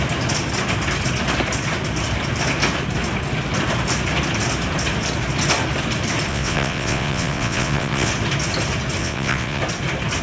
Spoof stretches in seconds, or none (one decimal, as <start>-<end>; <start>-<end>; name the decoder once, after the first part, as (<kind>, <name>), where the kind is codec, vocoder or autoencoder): 6.3-8.1 (vocoder, WaveNeXt); 9.0-9.6